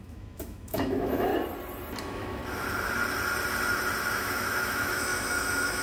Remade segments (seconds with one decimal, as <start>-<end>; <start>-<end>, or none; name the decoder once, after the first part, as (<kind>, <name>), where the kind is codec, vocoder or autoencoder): 0.0-1.3 (autoencoder, DAC-VAE); 2.0-2.4; 4.1-5.8

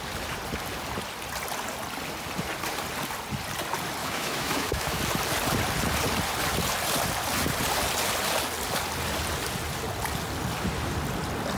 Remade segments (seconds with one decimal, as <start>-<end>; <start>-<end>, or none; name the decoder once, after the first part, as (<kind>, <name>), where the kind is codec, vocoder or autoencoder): 4.0-5.0 (autoencoder, DAC-VAE)

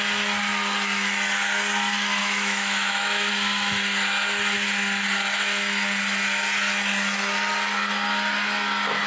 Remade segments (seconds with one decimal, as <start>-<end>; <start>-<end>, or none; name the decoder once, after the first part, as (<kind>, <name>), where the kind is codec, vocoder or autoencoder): 2.2-3.3 (autoencoder, DAC-VAE)

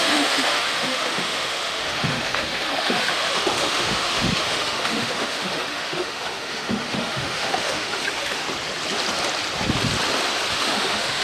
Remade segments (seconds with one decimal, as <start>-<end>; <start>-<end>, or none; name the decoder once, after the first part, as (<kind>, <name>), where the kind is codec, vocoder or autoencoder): 0.0-8.4 (autoencoder, DAC-VAE); 10.5-11.2

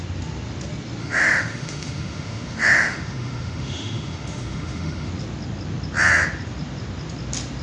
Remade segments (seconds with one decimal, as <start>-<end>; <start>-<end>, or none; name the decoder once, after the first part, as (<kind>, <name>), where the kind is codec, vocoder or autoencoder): 1.0-5.1 (autoencoder, DAC-VAE)

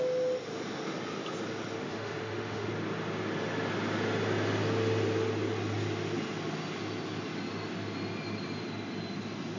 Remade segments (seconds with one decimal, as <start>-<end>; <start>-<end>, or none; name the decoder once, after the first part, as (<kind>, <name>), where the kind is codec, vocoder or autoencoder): 1.8-2.7 (autoencoder, DAC-VAE)